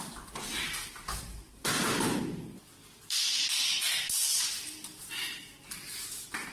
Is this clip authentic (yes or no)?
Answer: yes